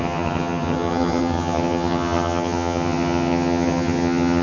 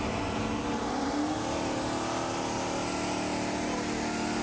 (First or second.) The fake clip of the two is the first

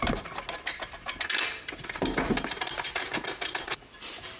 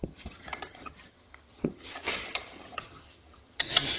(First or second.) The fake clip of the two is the second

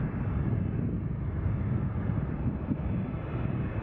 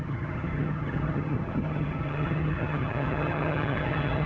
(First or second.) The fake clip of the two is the second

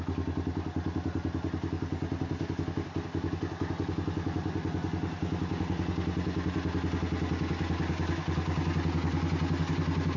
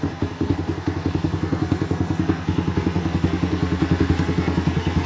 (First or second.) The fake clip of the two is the second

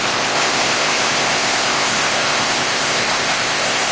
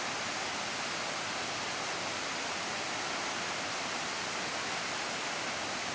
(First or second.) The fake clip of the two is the first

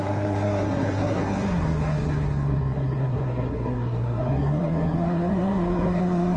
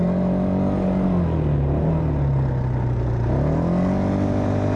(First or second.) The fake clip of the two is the first